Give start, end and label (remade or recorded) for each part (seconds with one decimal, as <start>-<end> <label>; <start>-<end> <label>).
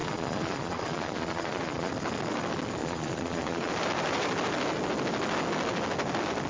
0.0-1.9 remade; 1.9-2.8 recorded; 2.8-3.7 remade; 3.7-6.5 recorded